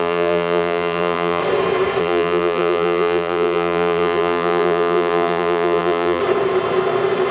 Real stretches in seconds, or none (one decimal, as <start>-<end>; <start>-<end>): 1.4-2.0; 6.2-7.3